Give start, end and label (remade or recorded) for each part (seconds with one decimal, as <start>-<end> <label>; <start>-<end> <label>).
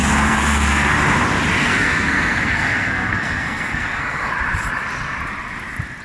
0.0-0.9 remade; 0.9-1.6 recorded; 1.6-4.3 remade; 4.3-6.0 recorded